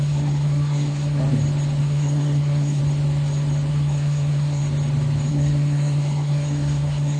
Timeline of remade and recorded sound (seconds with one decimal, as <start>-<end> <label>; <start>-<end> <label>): 0.0-1.2 remade; 1.2-1.8 recorded; 1.8-2.8 remade; 2.8-3.7 recorded; 3.7-4.6 remade; 4.6-5.3 recorded; 5.3-7.2 remade

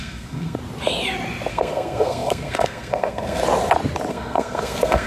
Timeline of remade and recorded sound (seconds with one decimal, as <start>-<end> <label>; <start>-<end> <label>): 0.0-0.6 remade; 0.6-1.5 recorded; 1.5-3.4 remade; 3.4-4.1 recorded; 4.1-5.1 remade